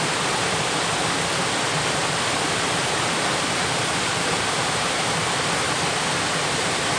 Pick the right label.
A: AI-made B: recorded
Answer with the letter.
B